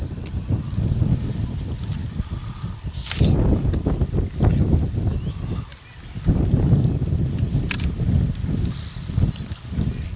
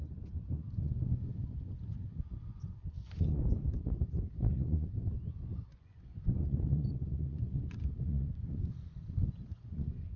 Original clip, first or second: first